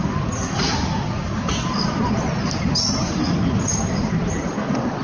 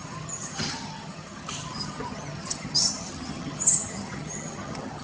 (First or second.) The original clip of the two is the first